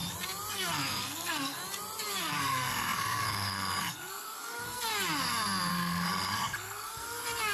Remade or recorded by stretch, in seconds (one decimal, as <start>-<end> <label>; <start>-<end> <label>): 0.0-0.5 recorded; 0.5-1.6 remade; 1.6-2.2 recorded; 2.2-4.9 remade; 4.9-5.7 recorded; 5.7-7.5 remade